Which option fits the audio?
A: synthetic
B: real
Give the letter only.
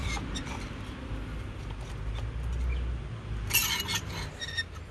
B